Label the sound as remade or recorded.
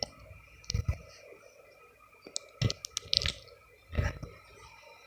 recorded